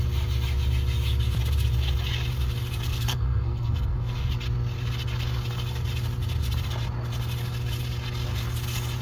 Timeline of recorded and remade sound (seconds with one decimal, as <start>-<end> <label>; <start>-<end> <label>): 0.0-2.9 recorded; 2.9-4.3 remade; 4.3-9.0 recorded